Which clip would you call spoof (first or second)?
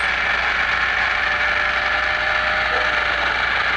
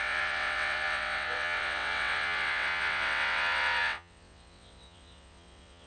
second